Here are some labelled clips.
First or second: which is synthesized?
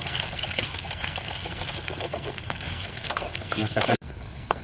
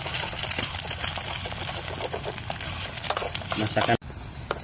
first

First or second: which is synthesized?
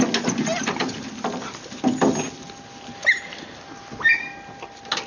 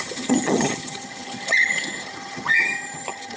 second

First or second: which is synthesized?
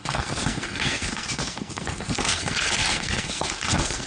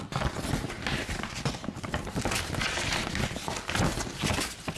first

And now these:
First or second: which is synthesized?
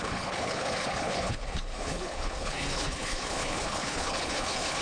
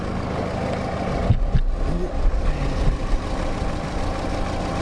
first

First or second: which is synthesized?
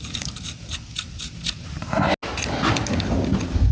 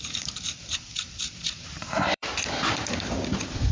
second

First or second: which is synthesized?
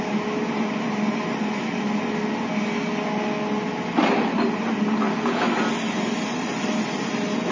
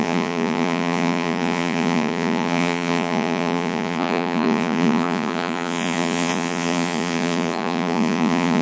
second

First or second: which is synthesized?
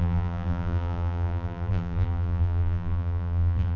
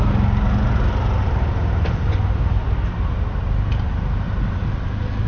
first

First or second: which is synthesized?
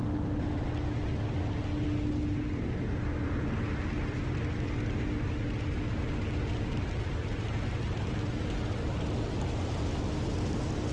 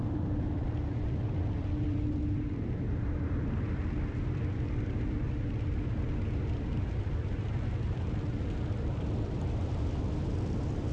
second